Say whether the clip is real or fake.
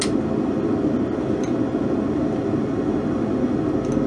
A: real